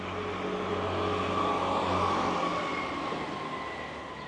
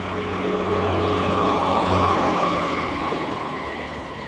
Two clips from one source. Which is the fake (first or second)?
second